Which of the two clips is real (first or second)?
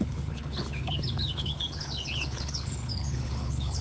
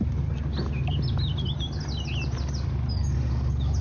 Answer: second